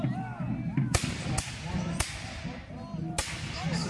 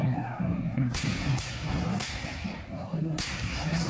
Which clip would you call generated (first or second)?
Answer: second